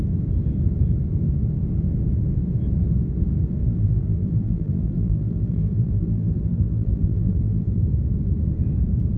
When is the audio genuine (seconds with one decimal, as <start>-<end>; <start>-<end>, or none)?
0.0-3.6; 7.8-9.2